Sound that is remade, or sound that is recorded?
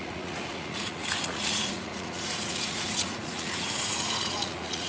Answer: remade